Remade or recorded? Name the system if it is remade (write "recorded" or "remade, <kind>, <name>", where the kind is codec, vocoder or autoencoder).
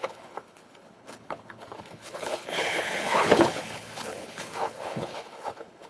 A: remade, codec, HILCodec